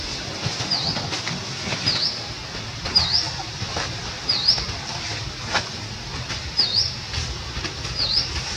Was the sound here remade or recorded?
recorded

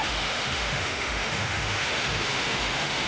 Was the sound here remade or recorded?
remade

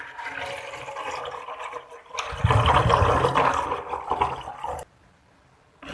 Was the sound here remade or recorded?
recorded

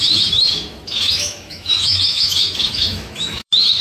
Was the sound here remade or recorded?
remade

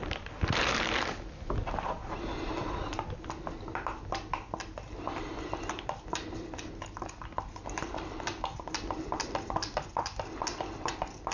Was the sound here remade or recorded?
recorded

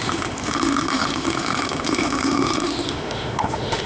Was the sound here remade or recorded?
remade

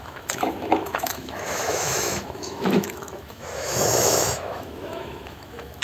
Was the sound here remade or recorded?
remade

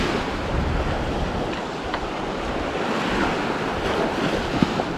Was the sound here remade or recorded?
recorded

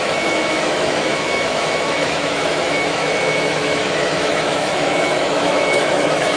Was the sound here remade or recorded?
remade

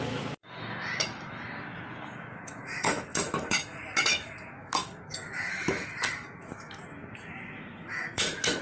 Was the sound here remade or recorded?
remade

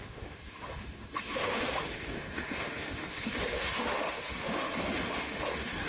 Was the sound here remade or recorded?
remade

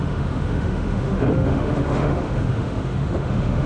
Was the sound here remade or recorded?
remade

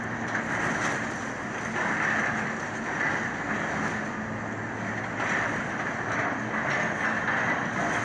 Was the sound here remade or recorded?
recorded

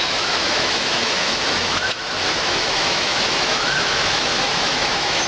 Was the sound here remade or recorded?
remade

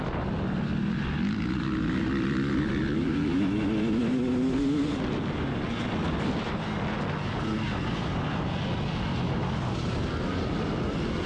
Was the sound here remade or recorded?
recorded